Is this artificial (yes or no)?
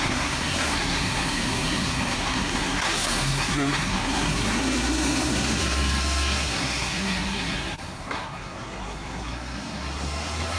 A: yes